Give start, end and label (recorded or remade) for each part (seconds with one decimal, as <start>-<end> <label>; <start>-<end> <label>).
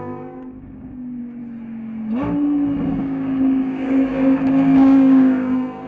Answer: 0.0-1.4 remade; 1.4-3.0 recorded; 3.0-5.9 remade